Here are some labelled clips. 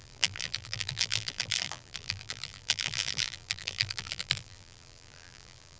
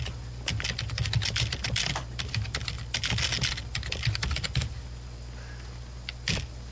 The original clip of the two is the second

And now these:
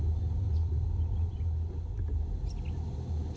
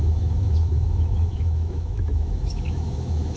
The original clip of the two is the first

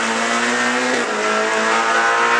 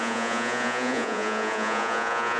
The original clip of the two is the first